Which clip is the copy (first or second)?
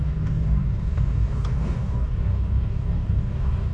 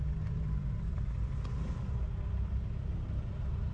first